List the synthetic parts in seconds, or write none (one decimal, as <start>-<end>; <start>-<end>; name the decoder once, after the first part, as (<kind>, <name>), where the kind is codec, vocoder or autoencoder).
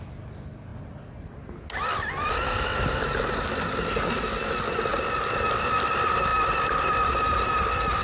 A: none